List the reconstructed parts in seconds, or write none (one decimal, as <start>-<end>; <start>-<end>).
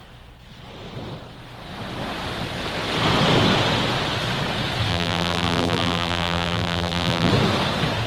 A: 4.9-7.3